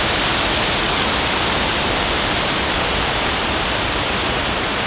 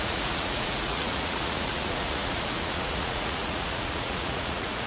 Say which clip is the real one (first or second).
first